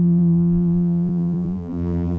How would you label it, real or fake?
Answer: fake